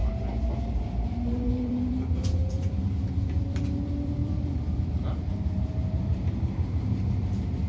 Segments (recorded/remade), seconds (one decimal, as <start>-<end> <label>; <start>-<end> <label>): 0.0-7.7 remade